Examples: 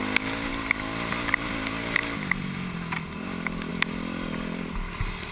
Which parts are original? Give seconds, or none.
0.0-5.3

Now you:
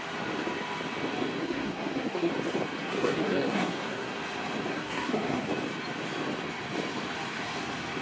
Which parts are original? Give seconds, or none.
0.0-1.4; 2.3-2.8; 4.2-4.7; 5.5-8.0

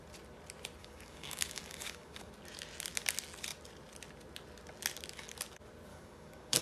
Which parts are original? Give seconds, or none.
0.0-0.8; 2.3-5.9

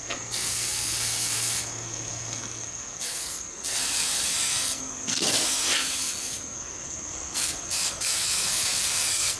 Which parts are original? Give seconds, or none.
none

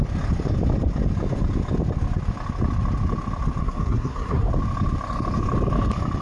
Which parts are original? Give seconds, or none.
0.0-3.6; 4.5-6.2

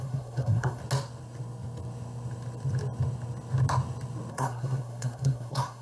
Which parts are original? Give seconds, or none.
0.8-4.3